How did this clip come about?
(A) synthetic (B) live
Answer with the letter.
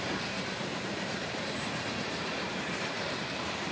A